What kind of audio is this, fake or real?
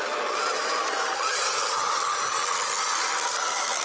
real